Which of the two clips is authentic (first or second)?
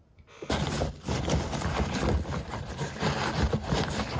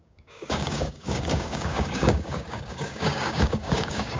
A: first